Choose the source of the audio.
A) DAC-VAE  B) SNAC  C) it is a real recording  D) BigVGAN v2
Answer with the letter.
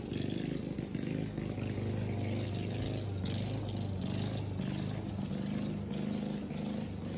C